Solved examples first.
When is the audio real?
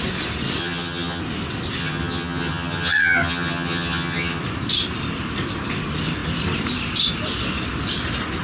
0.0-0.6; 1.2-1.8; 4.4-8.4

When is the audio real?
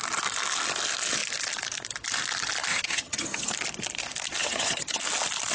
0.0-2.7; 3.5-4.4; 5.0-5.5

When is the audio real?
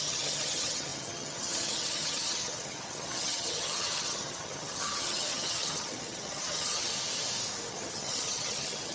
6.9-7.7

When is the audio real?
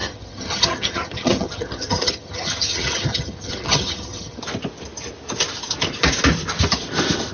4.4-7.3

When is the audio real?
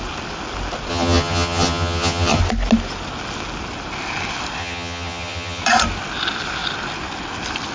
0.0-0.9; 2.4-4.6; 5.6-7.7